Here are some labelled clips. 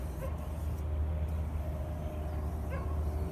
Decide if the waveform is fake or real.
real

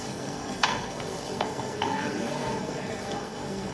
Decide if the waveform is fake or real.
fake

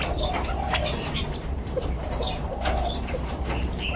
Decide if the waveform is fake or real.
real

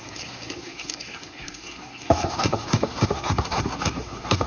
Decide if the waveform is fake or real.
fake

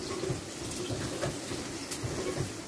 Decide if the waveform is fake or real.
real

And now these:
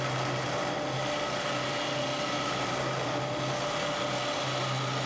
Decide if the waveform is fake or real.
real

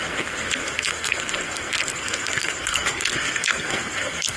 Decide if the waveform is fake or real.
fake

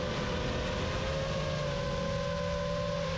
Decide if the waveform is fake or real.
real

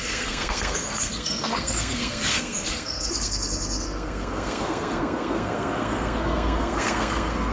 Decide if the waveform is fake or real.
fake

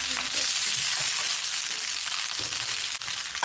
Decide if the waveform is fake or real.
real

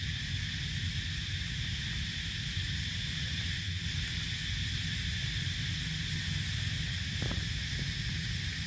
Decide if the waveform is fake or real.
real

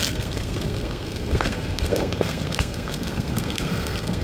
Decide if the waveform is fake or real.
fake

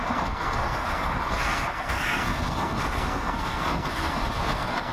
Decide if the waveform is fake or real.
fake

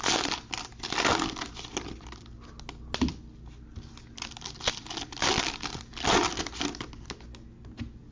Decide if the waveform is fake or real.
real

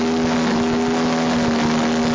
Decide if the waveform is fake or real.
real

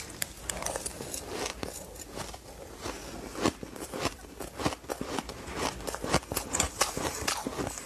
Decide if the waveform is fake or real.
real